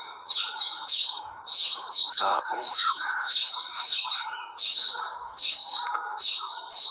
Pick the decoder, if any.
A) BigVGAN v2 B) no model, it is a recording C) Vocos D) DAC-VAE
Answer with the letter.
D